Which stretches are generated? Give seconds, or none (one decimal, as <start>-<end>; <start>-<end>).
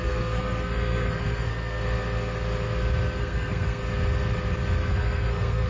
0.0-1.8; 3.2-3.8; 4.8-5.7